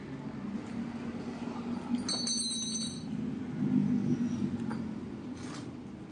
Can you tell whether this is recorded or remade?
recorded